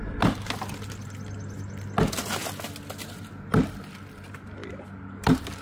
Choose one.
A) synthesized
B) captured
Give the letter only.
B